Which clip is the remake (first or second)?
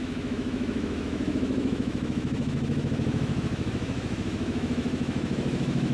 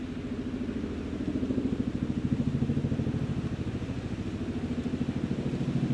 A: first